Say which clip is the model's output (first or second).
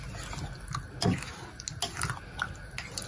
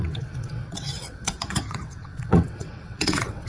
second